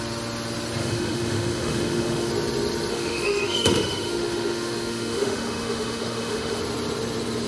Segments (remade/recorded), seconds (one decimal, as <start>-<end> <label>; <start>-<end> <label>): 0.0-0.8 recorded; 0.8-2.3 remade; 2.3-2.9 recorded; 2.9-6.6 remade; 6.6-7.5 recorded